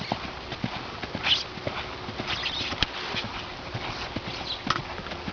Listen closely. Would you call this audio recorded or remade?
recorded